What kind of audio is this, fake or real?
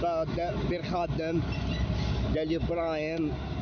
real